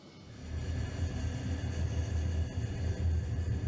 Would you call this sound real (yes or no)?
yes